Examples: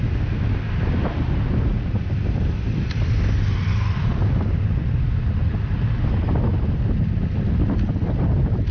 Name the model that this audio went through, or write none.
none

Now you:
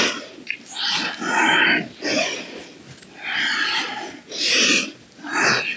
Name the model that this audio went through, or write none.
none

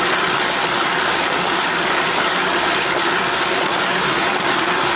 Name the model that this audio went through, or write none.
none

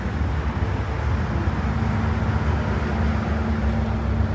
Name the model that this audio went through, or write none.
none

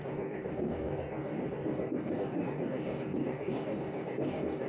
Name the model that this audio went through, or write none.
codec, DAC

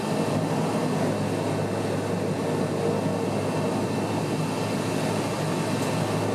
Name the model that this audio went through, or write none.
none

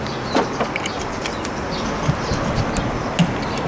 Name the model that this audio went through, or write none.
none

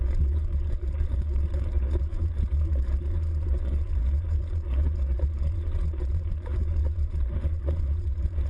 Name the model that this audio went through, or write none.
vocoder, Vocos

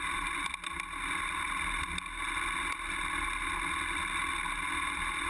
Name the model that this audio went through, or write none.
none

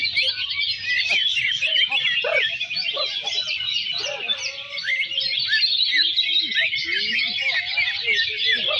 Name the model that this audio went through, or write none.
none